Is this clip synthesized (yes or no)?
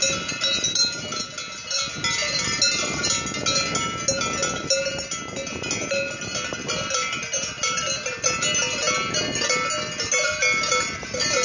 no